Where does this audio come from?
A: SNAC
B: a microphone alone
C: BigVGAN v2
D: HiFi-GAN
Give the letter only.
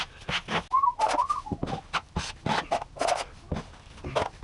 B